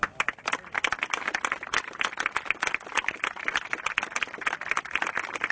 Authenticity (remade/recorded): recorded